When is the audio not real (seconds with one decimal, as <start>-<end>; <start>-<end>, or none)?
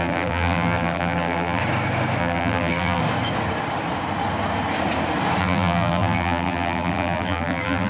0.0-1.6; 2.2-3.0; 5.4-7.9